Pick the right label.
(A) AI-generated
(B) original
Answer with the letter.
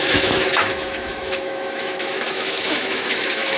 A